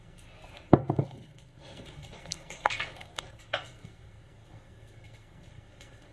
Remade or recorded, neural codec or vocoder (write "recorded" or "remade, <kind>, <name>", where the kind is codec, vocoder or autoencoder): remade, codec, SNAC